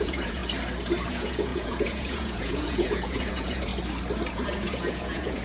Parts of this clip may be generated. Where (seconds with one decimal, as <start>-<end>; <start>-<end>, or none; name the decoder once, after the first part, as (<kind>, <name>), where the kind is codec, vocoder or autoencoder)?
0.0-0.4 (vocoder, Vocos); 1.1-3.7; 4.3-5.4